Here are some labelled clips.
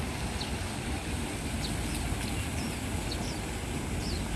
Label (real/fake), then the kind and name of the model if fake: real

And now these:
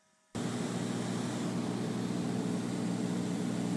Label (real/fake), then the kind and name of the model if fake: real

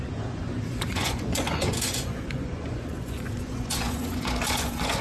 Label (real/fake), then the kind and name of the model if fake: fake, vocoder, Vocos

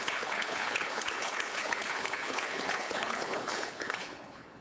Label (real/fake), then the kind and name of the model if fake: fake, codec, HILCodec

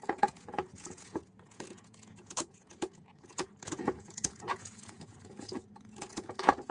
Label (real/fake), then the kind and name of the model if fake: fake, vocoder, Vocos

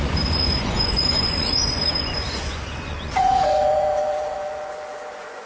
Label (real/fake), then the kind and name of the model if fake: fake, vocoder, Vocos